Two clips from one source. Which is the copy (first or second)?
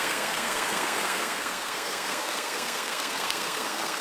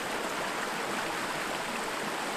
first